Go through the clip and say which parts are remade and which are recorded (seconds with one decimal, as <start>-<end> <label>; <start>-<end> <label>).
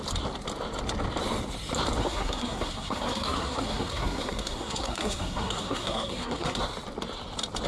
0.0-2.0 recorded; 2.0-6.6 remade; 6.6-7.7 recorded